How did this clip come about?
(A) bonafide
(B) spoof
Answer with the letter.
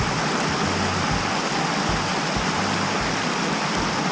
A